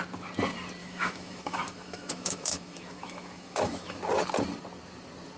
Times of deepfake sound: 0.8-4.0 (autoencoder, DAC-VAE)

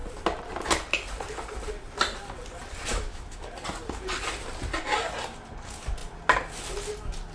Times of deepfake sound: 2.9-3.4 (autoencoder, DAC-VAE)

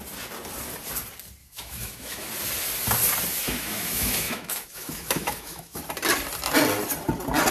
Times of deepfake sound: 1.4-2.3 (autoencoder, DAC-VAE); 3.3-5.8

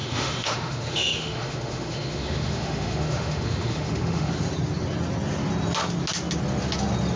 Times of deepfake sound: 0.0-4.3 (autoencoder, DAC-VAE)

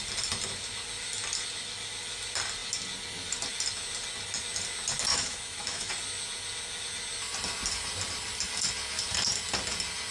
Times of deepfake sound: 5.1-5.9 (autoencoder, DAC-VAE)